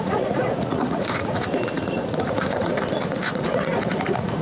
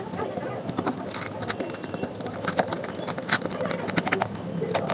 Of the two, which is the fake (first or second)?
first